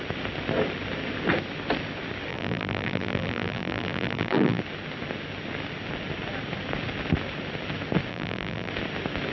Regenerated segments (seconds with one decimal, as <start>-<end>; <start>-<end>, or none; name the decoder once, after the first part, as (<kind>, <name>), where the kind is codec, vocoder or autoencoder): 2.3-4.6 (vocoder, BigVGAN v2); 8.1-8.7